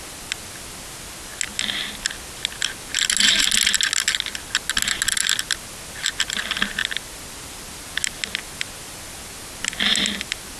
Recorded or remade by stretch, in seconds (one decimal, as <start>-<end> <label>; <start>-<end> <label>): 0.0-10.6 recorded